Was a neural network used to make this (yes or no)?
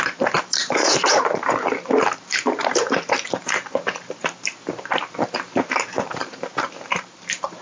yes